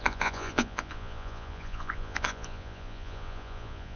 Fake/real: fake